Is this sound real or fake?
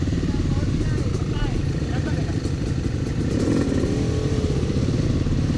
real